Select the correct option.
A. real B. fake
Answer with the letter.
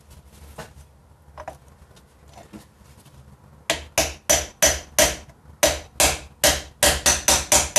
A